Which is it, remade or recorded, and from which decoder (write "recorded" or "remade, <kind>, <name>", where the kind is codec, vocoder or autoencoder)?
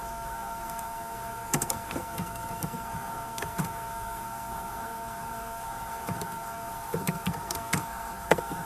remade, codec, SNAC